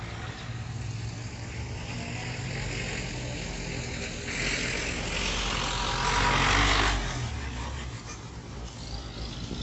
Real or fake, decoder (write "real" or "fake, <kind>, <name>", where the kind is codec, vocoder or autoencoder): real